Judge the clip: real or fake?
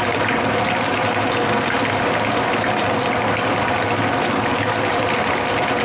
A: real